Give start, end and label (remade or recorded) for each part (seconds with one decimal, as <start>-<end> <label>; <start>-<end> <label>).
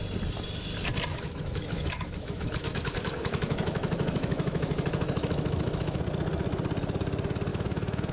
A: 0.0-1.1 recorded; 1.1-6.0 remade; 6.0-7.5 recorded; 7.5-8.1 remade